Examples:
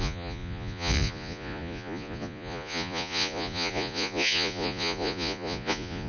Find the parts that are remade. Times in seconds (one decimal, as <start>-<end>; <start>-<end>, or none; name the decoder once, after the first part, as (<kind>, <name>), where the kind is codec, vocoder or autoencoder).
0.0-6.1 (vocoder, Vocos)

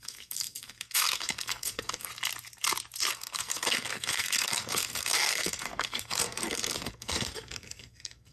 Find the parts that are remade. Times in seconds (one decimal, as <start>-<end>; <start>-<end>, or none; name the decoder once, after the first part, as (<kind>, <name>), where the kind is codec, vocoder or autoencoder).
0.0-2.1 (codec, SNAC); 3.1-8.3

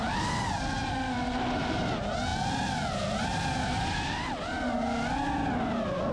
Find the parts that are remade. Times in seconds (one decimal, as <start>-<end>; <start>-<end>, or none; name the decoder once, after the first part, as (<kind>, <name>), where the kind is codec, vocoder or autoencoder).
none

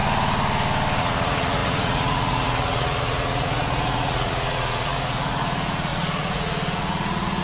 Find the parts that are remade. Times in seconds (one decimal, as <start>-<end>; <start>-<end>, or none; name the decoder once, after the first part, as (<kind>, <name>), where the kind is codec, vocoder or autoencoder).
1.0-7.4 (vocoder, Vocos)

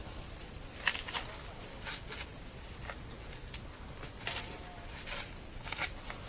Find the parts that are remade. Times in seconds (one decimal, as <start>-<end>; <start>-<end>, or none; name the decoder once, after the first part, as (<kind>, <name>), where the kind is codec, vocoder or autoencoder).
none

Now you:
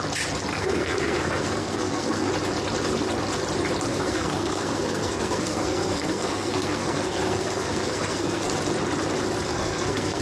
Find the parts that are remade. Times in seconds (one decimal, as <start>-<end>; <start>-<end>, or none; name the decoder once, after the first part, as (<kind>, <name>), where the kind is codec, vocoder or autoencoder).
0.5-2.3 (codec, SNAC); 3.9-8.5; 9.5-10.2

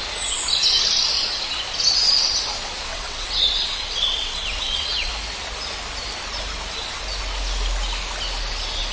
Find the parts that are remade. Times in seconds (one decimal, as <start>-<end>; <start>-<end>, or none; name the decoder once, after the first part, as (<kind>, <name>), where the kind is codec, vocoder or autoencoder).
2.9-5.1 (vocoder, WaveNeXt)

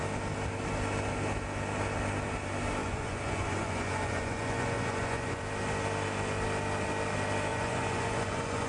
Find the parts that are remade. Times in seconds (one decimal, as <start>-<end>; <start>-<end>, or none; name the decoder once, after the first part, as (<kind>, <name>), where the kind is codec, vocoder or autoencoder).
2.8-5.4 (vocoder, Vocos); 7.5-8.7